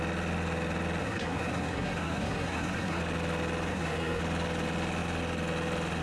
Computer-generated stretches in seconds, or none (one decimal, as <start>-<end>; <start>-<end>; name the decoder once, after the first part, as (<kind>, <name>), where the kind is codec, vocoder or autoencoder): 1.0-3.0 (codec, SNAC); 3.7-4.2